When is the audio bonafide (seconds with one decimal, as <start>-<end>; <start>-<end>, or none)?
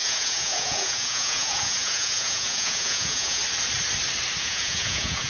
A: 3.4-4.4